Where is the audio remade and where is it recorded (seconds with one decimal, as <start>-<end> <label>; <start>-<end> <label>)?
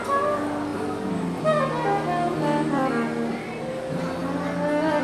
0.0-5.0 recorded